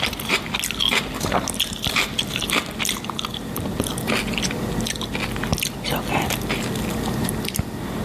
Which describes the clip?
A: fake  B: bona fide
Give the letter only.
B